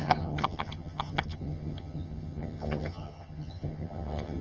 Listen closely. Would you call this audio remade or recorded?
remade